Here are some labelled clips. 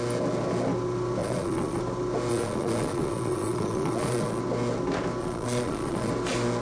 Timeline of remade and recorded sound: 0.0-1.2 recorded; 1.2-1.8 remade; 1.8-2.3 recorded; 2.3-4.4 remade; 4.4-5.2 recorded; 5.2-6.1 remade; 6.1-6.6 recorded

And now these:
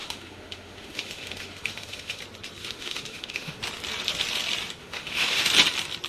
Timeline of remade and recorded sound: 0.0-2.2 remade; 2.2-2.6 recorded; 2.6-3.6 remade; 3.6-4.8 recorded; 4.8-5.5 remade; 5.5-6.1 recorded

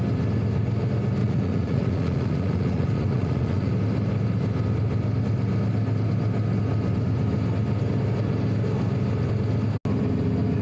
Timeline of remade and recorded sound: 0.0-1.2 recorded; 1.2-3.7 remade; 3.7-10.6 recorded

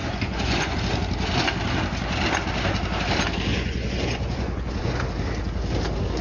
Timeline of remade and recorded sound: 0.0-0.8 remade; 0.8-3.5 recorded; 3.5-5.1 remade; 5.1-6.2 recorded